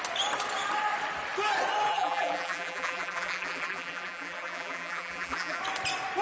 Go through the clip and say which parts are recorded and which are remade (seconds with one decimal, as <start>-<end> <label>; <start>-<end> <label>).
0.0-1.9 recorded; 1.9-5.6 remade; 5.6-6.2 recorded